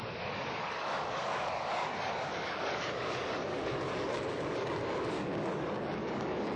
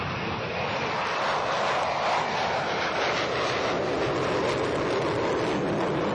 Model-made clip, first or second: first